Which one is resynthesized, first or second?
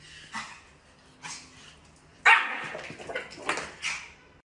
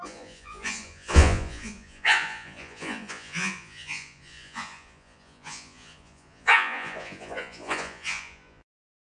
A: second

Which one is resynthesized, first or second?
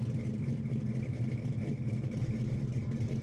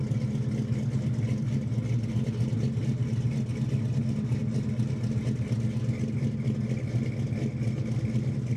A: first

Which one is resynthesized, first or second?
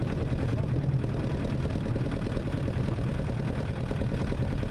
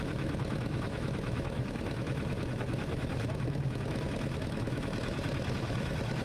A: second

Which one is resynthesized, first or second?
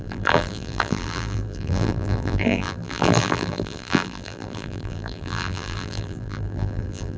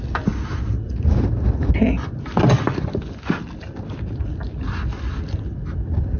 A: first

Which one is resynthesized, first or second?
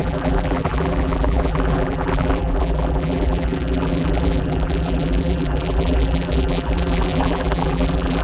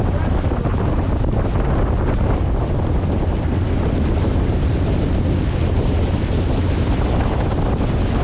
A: first